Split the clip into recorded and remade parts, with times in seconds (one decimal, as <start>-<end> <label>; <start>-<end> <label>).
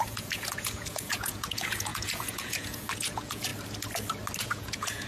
0.0-3.5 remade; 3.5-4.4 recorded; 4.4-5.1 remade